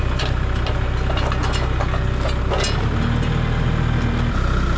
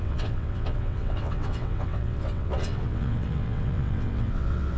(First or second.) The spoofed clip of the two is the second